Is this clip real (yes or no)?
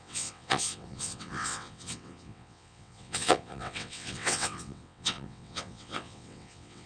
no